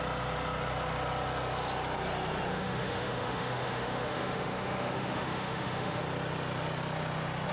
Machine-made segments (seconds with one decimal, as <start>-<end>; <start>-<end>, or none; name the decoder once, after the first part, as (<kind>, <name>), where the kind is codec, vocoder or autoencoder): 2.5-6.0 (autoencoder, DAC-VAE)